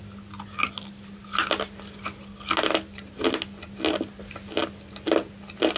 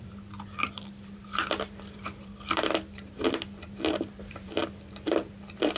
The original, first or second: first